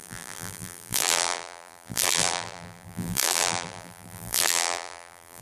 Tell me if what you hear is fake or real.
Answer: fake